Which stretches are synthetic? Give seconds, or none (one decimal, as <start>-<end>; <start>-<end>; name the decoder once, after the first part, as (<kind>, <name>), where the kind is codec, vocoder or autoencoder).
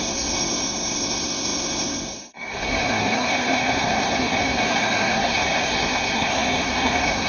0.0-7.3 (codec, SNAC)